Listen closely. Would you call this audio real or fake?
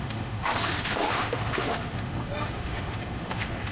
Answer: fake